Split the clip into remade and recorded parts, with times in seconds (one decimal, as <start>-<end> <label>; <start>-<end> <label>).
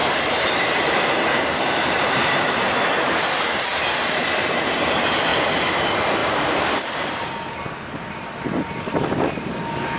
0.0-2.5 remade; 2.5-6.2 recorded; 6.2-7.7 remade; 7.7-10.0 recorded